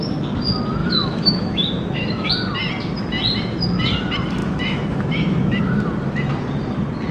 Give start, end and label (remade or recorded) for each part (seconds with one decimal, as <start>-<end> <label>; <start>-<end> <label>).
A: 0.0-0.8 recorded; 0.8-2.3 remade; 2.3-4.4 recorded; 4.4-5.6 remade; 5.6-7.1 recorded